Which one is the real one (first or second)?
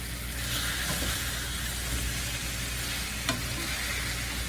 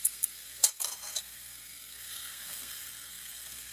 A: first